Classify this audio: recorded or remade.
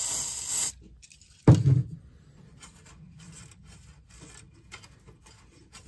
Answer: recorded